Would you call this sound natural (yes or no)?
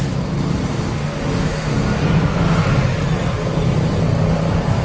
yes